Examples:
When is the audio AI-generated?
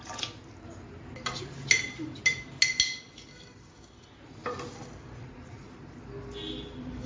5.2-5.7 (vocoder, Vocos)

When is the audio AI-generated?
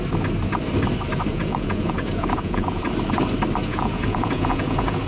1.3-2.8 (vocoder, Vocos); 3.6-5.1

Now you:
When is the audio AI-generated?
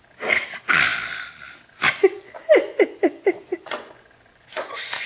2.0-5.1 (vocoder, Vocos)